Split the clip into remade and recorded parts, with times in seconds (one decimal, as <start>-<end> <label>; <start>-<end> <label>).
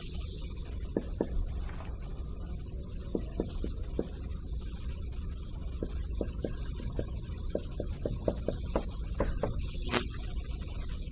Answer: 0.0-11.1 recorded